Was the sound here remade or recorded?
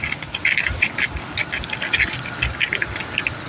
recorded